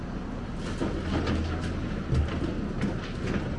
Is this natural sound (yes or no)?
yes